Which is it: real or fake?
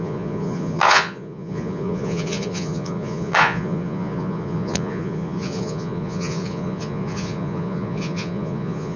fake